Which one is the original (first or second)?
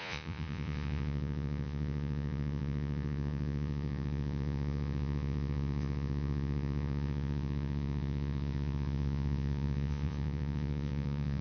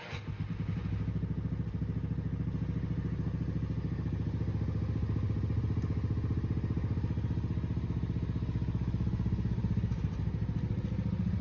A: second